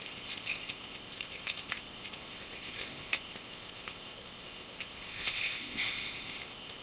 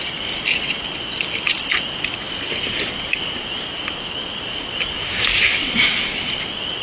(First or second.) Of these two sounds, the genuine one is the second